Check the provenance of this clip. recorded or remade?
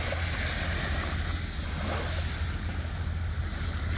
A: recorded